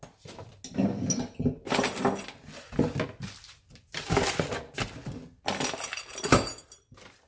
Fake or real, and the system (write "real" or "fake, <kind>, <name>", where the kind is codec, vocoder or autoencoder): real